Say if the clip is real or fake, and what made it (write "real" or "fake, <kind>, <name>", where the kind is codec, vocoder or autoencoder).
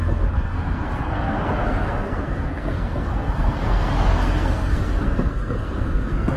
fake, codec, SNAC